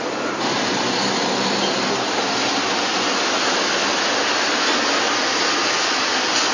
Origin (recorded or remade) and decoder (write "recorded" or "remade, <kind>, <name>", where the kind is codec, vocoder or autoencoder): recorded